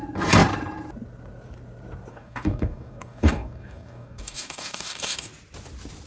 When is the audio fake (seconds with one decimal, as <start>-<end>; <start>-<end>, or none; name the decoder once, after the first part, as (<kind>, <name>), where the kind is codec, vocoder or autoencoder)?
2.1-5.3 (codec, DAC)